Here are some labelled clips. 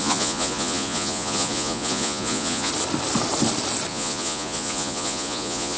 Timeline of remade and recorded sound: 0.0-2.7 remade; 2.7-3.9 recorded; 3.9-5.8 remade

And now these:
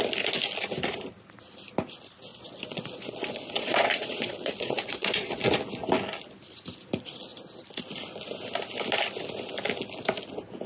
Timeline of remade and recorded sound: 0.0-2.3 recorded; 2.3-5.5 remade; 5.5-10.7 recorded

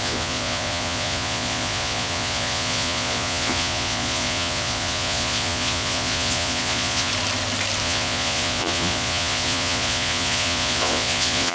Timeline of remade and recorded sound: 0.0-7.1 remade; 7.1-7.8 recorded; 7.8-11.5 remade

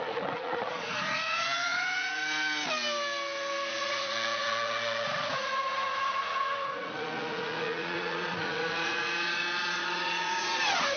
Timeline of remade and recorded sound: 0.0-2.2 remade; 2.2-3.7 recorded; 3.7-11.0 remade